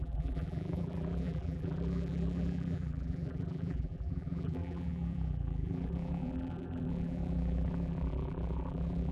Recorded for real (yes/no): no